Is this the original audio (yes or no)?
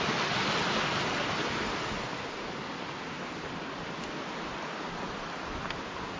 yes